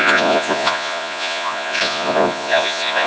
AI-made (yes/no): yes